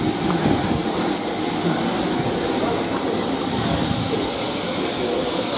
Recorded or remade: recorded